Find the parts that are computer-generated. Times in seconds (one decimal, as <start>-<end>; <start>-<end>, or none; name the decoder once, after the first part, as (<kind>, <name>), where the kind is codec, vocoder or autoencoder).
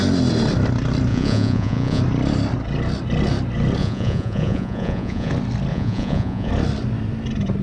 1.1-2.0 (vocoder, Vocos); 3.8-5.3; 5.7-6.5